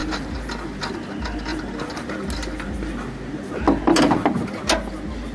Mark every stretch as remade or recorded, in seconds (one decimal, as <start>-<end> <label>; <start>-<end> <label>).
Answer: 0.0-5.3 recorded